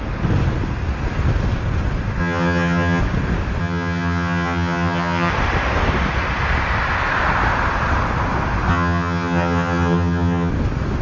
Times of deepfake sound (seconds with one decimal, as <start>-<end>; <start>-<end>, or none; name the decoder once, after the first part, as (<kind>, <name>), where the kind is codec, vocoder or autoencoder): 2.2-3.0 (vocoder, HiFi-GAN); 3.6-5.3; 8.7-10.5